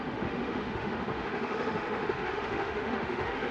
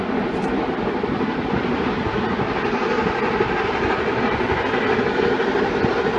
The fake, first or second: first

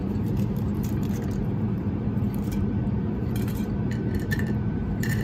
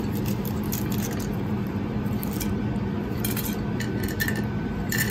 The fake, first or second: first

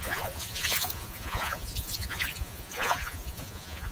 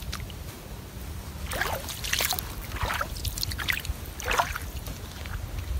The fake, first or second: first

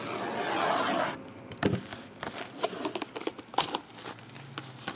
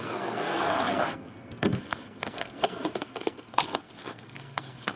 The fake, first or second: second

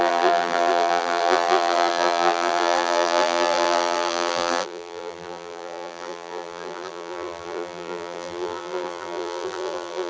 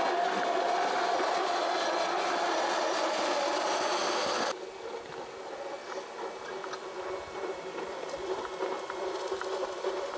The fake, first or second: first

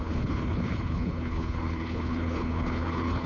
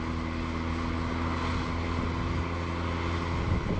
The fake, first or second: first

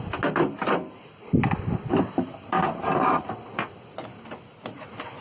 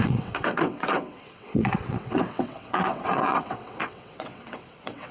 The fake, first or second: second